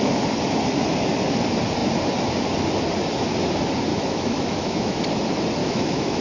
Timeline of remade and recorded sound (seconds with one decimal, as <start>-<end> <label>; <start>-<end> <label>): 0.0-3.9 recorded; 3.9-5.0 remade; 5.0-5.6 recorded; 5.6-6.2 remade